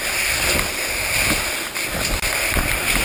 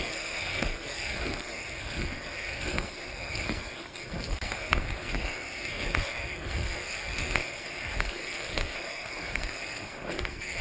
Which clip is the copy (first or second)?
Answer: second